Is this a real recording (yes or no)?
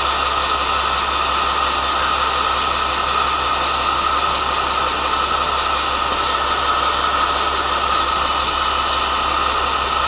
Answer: yes